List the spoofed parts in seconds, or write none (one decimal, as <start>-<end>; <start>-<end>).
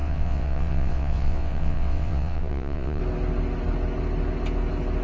0.0-3.0